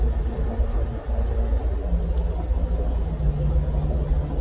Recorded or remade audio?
recorded